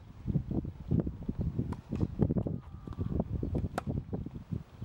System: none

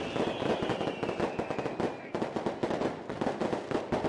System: none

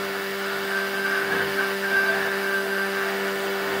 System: autoencoder, DAC-VAE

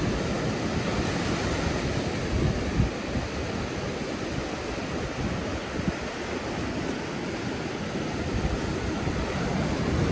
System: none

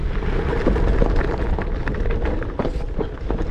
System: none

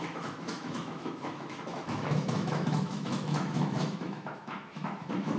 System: autoencoder, DAC-VAE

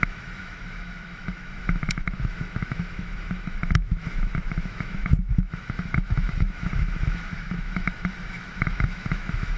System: autoencoder, DAC-VAE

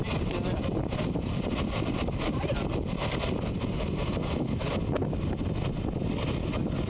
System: none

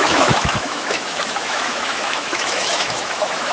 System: autoencoder, DAC-VAE